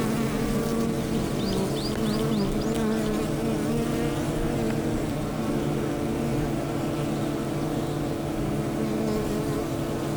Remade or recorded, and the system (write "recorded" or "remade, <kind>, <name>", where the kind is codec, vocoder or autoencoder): recorded